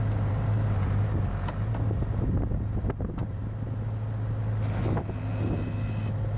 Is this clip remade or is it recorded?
recorded